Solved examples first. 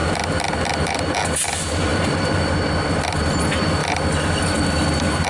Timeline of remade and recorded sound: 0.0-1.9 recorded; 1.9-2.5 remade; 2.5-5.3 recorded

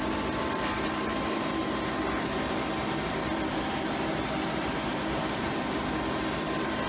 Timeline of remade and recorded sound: 0.0-1.6 remade; 1.6-4.9 recorded; 4.9-6.9 remade

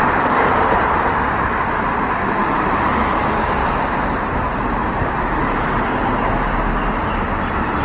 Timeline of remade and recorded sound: 0.0-3.6 recorded; 3.6-5.1 remade; 5.1-7.8 recorded

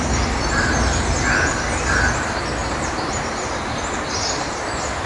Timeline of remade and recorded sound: 0.0-2.6 recorded; 2.6-5.1 remade

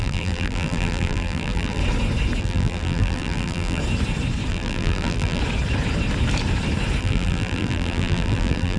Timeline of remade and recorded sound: 0.0-1.8 remade; 1.8-2.4 recorded; 2.4-3.8 remade; 3.8-4.5 recorded; 4.5-5.4 remade; 5.4-7.0 recorded; 7.0-8.8 remade

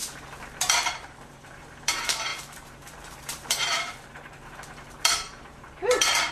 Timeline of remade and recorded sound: 0.0-0.6 recorded; 0.6-6.3 remade

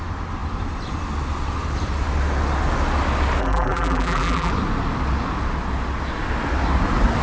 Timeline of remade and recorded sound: 0.0-3.4 recorded; 3.4-4.5 remade; 4.5-7.2 recorded

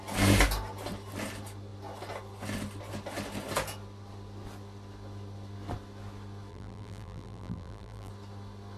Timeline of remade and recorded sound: 0.0-6.5 recorded; 6.5-8.1 remade; 8.1-8.8 recorded